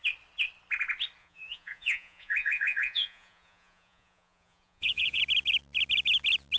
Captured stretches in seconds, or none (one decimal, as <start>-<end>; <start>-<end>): 0.0-1.2; 5.2-6.6